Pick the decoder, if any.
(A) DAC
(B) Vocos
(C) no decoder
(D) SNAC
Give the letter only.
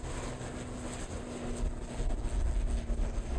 C